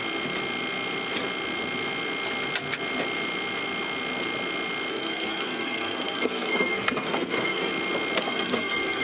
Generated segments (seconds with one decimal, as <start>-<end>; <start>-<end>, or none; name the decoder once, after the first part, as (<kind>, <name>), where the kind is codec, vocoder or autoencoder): 4.9-7.7 (codec, SNAC); 8.2-9.0